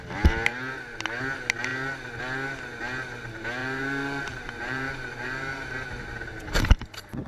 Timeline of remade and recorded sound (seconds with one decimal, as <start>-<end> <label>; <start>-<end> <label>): 0.0-3.6 recorded; 3.6-7.3 remade